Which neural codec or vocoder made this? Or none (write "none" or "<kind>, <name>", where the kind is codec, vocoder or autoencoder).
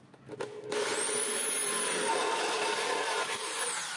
none